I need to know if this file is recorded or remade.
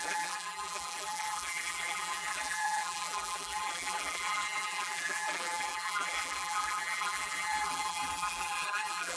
remade